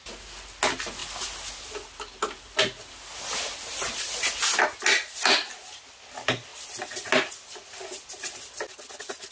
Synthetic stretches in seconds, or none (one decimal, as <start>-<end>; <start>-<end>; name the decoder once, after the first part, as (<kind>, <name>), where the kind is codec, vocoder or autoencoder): none